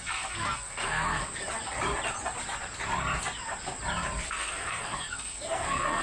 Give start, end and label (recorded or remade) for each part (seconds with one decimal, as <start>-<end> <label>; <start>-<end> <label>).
0.0-1.2 remade; 1.2-4.3 recorded; 4.3-6.0 remade